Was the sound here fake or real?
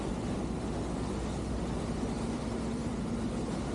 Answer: real